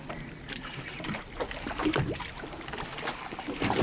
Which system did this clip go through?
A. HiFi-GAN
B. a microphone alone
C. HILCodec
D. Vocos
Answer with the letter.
B